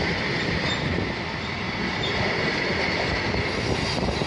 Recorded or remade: recorded